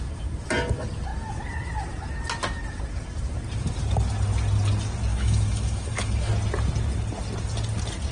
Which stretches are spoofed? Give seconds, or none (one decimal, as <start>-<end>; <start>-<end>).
5.1-6.3